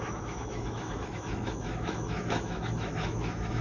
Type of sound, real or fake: fake